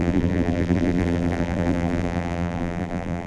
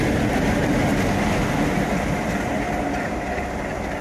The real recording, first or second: second